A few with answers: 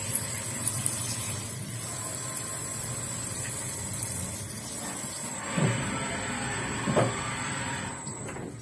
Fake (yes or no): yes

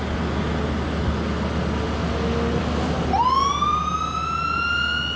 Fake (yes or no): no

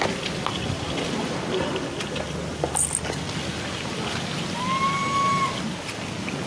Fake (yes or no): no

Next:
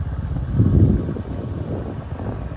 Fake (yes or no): no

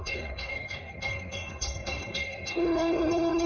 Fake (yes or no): yes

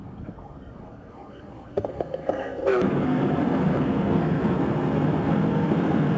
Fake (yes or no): yes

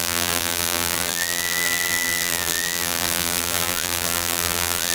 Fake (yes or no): yes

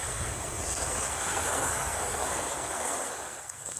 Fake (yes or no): yes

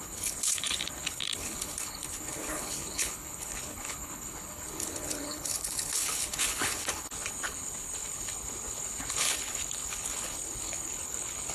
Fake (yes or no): yes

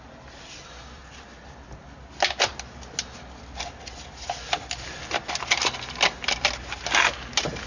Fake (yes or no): no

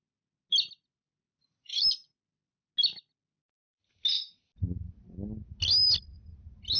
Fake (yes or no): no